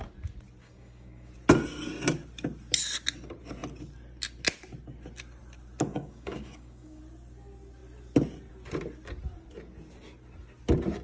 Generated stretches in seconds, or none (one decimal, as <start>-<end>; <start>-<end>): 0.6-1.3; 5.9-7.0